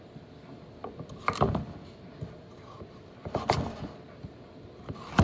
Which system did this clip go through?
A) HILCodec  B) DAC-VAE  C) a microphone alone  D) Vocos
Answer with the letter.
C